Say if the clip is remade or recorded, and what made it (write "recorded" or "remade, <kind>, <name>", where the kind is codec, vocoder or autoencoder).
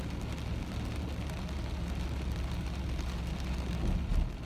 recorded